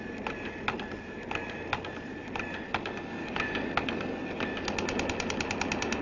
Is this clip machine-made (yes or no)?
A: no